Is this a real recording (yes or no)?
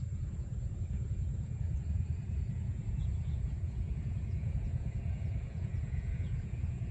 no